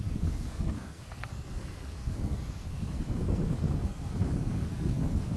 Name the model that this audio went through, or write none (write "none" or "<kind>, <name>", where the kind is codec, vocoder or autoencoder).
codec, SNAC